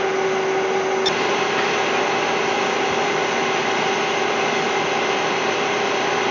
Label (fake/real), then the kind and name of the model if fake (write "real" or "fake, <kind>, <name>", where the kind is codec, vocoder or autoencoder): real